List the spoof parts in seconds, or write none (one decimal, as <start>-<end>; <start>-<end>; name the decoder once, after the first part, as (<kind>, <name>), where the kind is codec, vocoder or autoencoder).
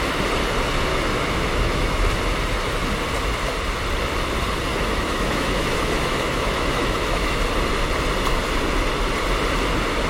0.9-2.1 (autoencoder, DAC-VAE); 4.7-7.4